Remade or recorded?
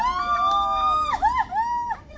recorded